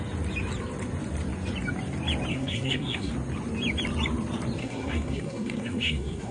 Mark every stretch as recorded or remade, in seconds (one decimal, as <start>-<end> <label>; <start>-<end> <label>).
0.0-2.3 recorded; 2.3-3.1 remade; 3.1-4.6 recorded; 4.6-6.3 remade